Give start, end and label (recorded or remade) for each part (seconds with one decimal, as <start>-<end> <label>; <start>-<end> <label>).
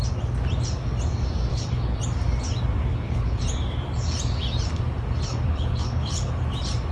0.0-1.5 recorded; 1.5-2.0 remade; 2.0-2.9 recorded; 2.9-3.4 remade; 3.4-5.3 recorded; 5.3-6.3 remade; 6.3-6.9 recorded